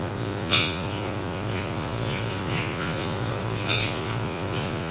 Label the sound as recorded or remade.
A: remade